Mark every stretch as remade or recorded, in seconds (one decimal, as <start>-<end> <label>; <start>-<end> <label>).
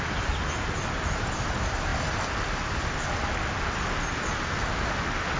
0.0-5.4 recorded